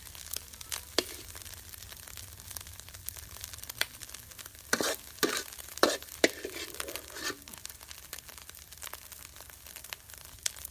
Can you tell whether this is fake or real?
real